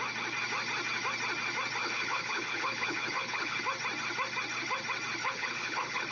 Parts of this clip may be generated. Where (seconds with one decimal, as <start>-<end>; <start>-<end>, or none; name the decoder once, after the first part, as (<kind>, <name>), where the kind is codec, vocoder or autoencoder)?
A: 1.8-3.6 (codec, HILCodec); 5.2-6.1